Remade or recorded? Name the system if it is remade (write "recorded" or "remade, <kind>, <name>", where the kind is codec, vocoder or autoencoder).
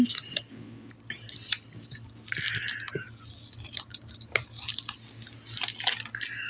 recorded